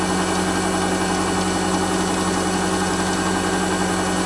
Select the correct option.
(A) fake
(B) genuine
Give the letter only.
B